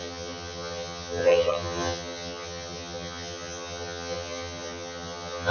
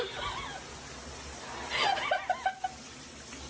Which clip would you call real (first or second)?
second